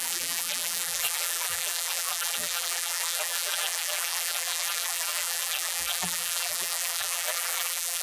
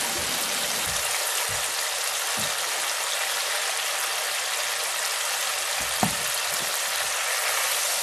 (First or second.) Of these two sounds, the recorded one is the second